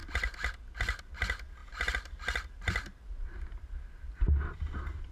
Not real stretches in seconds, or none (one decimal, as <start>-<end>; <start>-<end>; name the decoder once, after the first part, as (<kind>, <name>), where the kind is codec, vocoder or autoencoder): none